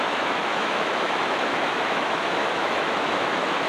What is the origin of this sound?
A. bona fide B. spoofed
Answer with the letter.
B